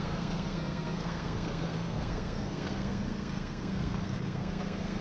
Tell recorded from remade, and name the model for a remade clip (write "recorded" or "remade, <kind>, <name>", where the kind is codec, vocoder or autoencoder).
remade, codec, SNAC